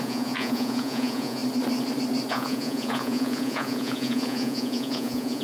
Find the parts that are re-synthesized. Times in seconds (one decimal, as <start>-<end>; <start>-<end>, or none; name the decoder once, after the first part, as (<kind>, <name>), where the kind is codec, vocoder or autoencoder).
0.0-1.4 (vocoder, Vocos); 2.3-5.4